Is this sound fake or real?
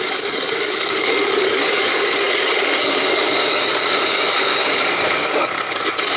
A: fake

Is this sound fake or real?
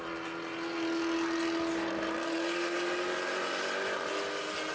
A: real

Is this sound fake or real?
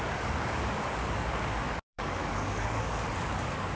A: fake